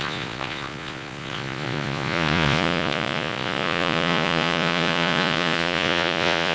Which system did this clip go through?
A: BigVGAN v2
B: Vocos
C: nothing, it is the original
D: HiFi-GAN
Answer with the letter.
B